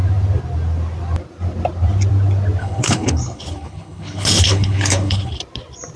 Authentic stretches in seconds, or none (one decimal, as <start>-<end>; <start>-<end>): 0.0-2.6; 5.4-6.0